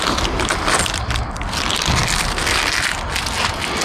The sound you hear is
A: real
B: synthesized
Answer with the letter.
A